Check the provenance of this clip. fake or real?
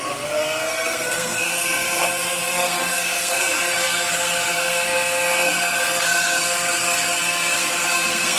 fake